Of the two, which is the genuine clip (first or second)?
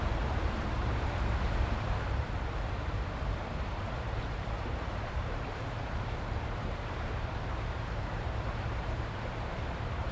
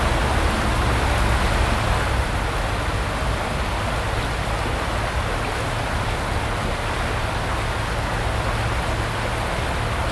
second